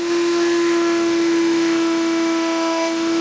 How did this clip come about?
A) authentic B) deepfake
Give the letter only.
B